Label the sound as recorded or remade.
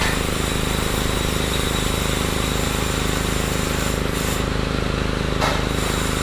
remade